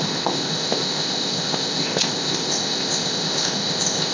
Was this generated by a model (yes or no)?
yes